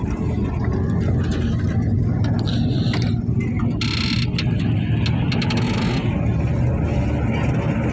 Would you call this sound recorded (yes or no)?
yes